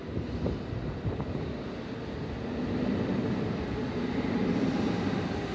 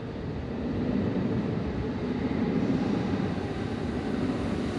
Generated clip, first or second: second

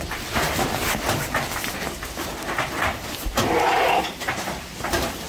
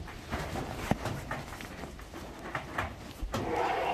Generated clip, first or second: second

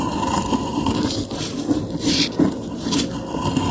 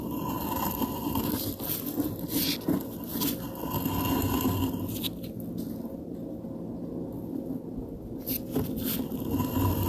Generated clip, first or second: first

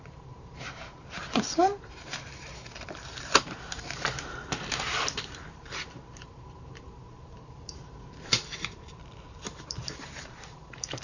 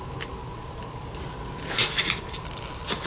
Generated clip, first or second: first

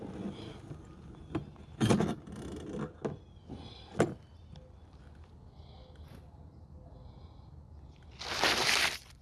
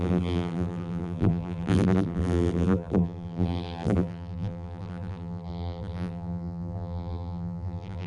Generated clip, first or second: second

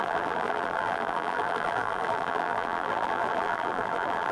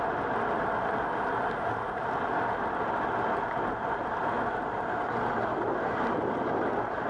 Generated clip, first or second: first